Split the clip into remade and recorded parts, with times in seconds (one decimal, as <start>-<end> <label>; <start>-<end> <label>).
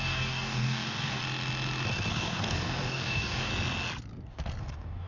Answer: 0.0-1.2 remade; 1.2-2.1 recorded; 2.1-3.5 remade; 3.5-4.6 recorded; 4.6-5.1 remade